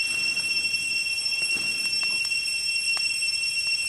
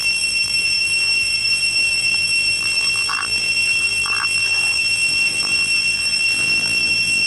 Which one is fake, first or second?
second